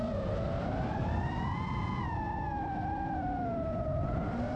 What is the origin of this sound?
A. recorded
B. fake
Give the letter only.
B